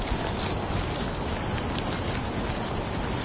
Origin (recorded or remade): recorded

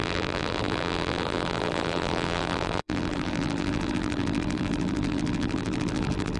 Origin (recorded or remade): remade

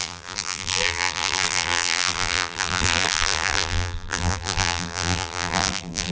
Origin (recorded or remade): remade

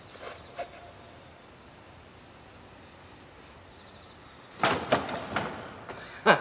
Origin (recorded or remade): recorded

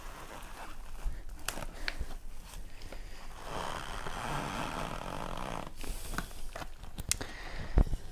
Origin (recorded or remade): recorded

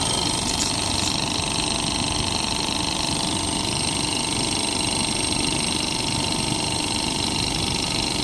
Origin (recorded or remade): remade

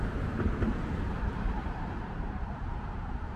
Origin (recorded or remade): remade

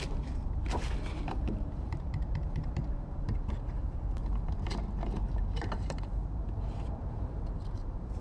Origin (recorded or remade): remade